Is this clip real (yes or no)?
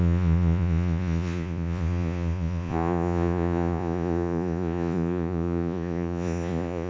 no